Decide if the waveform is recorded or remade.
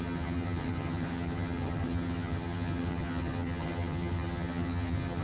remade